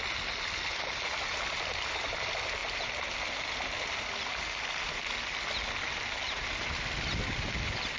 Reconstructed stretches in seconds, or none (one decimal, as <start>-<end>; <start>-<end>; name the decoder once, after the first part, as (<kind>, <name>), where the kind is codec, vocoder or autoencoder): none